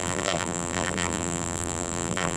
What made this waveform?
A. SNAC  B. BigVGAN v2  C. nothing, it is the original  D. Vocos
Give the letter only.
B